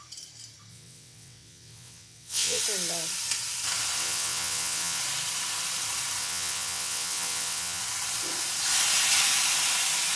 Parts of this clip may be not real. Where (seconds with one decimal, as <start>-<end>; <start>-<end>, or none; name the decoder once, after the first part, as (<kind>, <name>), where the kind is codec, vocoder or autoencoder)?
0.7-2.6 (vocoder, WaveNeXt); 4.0-5.0; 6.2-7.8

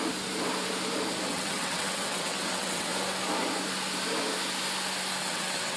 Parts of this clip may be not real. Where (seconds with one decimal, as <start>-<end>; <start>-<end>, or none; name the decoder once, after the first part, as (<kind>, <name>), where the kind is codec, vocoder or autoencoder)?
1.3-2.9 (vocoder, WaveNeXt); 5.2-5.8

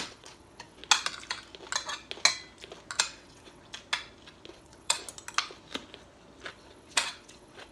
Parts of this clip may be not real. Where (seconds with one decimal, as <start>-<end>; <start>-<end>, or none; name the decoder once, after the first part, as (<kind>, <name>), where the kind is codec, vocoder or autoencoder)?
0.0-0.8 (vocoder, WaveNeXt); 3.0-3.6; 4.5-5.0; 6.5-7.7

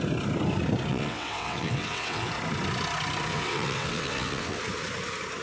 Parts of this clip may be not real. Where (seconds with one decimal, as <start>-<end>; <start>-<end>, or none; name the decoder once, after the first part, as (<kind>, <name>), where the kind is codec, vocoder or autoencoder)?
0.9-2.3 (vocoder, WaveNeXt); 3.3-4.6

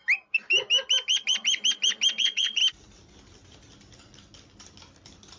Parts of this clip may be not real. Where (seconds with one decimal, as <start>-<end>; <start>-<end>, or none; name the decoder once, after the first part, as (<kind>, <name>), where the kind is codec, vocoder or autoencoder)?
2.1-2.6 (vocoder, WaveNeXt)

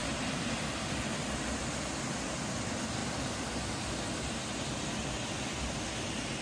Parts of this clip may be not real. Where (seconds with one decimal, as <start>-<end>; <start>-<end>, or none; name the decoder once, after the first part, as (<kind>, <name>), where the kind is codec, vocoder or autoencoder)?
none

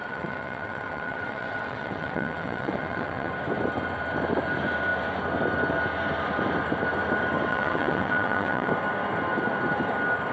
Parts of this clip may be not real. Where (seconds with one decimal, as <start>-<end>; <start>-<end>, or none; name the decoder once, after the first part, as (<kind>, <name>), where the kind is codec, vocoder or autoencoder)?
0.0-3.3 (vocoder, WaveNeXt); 7.5-8.7

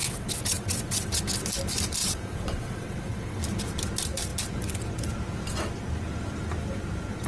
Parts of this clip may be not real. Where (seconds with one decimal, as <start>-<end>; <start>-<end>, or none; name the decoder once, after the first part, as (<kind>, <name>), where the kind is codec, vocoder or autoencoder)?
0.0-1.2 (vocoder, WaveNeXt); 2.0-3.4